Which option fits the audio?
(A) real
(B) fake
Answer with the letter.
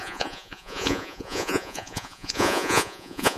B